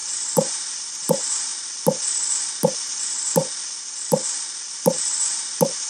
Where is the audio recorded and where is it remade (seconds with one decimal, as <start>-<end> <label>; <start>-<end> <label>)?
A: 0.0-1.5 remade; 1.5-3.0 recorded; 3.0-3.4 remade; 3.4-4.7 recorded; 4.7-5.9 remade